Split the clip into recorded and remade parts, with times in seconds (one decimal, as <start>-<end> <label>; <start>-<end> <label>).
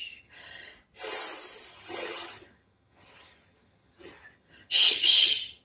0.0-0.7 remade; 0.7-1.7 recorded; 1.7-5.6 remade